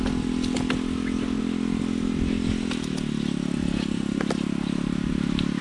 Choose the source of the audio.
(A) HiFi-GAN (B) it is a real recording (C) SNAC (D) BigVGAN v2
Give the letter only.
B